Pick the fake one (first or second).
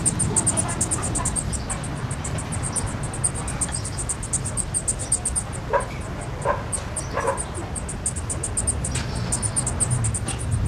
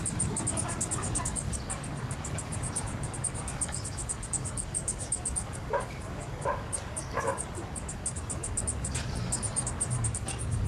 second